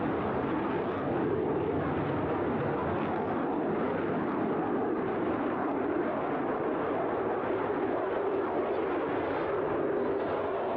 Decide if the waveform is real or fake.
real